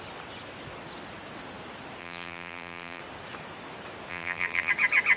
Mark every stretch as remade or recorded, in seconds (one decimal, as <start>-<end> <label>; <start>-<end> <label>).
0.0-2.0 recorded; 2.0-3.0 remade; 3.0-4.1 recorded; 4.1-4.7 remade; 4.7-5.2 recorded